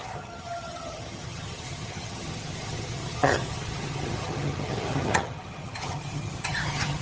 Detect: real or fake fake